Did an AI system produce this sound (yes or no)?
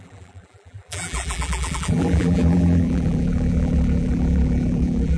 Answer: yes